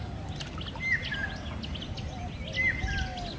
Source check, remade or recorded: recorded